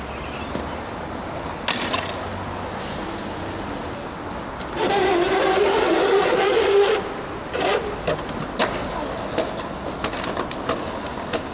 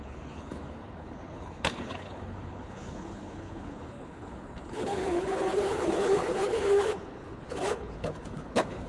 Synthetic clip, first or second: second